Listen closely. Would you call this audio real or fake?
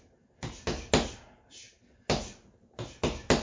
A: real